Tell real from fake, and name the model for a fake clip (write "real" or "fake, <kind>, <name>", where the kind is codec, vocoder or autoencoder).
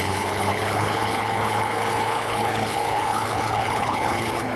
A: fake, codec, HILCodec